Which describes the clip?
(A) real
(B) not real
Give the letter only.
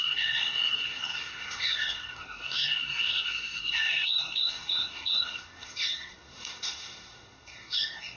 B